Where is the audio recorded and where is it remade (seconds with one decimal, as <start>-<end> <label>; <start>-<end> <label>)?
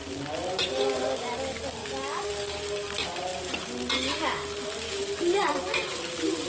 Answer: 0.0-1.8 recorded; 1.8-2.3 remade; 2.3-6.5 recorded